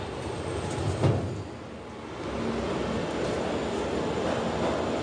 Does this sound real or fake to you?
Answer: real